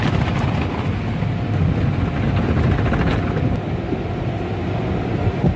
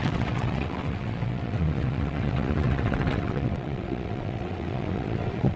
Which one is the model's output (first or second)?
second